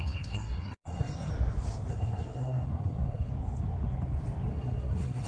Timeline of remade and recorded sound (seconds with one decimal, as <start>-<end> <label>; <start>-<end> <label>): 0.0-1.3 remade; 1.3-1.9 recorded; 1.9-3.3 remade; 3.3-4.5 recorded; 4.5-5.3 remade